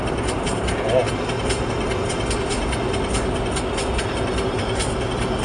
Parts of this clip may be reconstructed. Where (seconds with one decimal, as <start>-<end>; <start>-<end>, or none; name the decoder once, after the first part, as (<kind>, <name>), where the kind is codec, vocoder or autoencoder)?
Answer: none